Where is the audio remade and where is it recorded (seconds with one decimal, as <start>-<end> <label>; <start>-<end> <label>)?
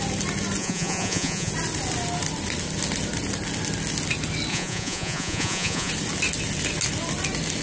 0.0-0.6 recorded; 0.6-1.5 remade; 1.5-4.5 recorded; 4.5-5.9 remade; 5.9-7.6 recorded